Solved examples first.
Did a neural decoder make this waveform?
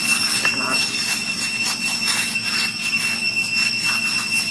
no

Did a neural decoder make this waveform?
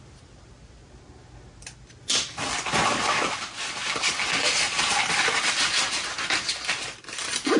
no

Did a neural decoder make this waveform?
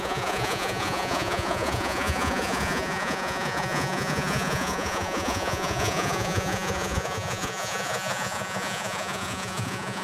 yes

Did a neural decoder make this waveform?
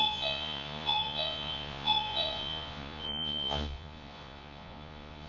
yes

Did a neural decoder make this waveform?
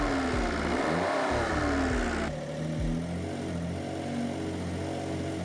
no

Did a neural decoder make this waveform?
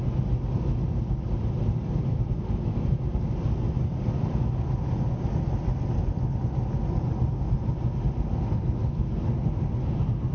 no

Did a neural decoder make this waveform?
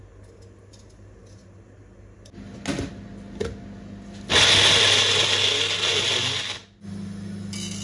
no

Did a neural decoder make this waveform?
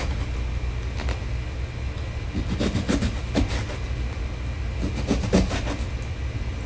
no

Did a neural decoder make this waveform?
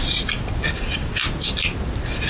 no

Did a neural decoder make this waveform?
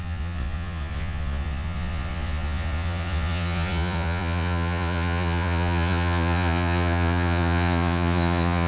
yes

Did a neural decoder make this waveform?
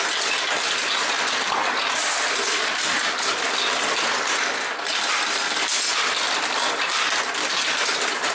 no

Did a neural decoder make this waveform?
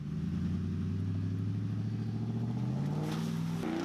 no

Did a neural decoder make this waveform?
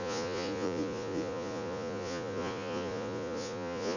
yes